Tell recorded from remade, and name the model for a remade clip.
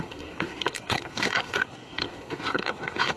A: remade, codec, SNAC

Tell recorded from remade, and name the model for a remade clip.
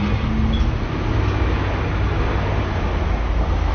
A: recorded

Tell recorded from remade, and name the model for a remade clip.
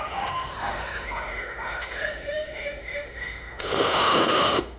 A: remade, autoencoder, DAC-VAE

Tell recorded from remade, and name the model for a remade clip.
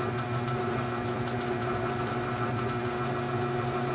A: recorded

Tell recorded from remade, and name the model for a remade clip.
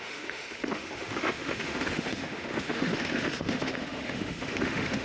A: remade, autoencoder, DAC-VAE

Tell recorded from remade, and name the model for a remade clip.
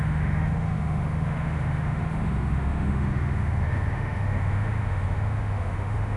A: remade, autoencoder, DAC-VAE